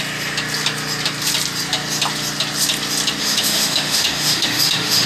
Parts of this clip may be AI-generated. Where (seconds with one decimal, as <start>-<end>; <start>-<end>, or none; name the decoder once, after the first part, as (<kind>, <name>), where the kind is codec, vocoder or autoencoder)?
3.2-5.1 (autoencoder, DAC-VAE)